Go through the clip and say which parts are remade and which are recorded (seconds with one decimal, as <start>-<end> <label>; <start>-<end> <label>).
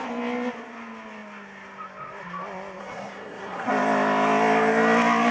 0.0-2.8 recorded; 2.8-3.7 remade; 3.7-5.3 recorded